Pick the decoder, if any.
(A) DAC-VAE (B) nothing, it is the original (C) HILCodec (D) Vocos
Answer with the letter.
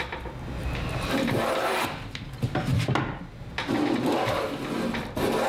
B